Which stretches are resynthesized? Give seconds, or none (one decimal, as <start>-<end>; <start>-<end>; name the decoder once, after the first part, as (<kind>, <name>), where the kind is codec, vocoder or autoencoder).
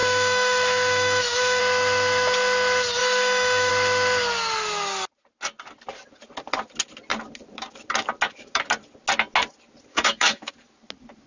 0.0-1.6 (autoencoder, DAC-VAE); 3.0-3.7; 9.9-10.5